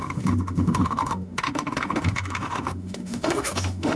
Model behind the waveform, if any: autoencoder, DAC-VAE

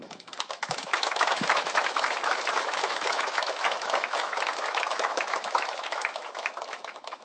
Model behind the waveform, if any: autoencoder, DAC-VAE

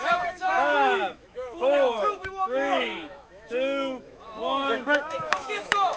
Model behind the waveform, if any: autoencoder, DAC-VAE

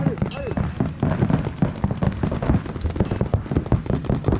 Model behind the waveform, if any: none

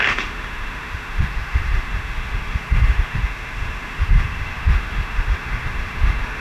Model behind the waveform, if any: autoencoder, DAC-VAE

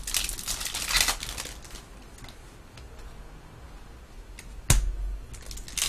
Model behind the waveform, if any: none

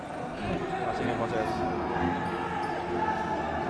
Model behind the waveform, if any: none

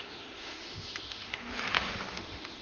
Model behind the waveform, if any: autoencoder, DAC-VAE